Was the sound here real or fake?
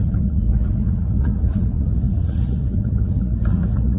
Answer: fake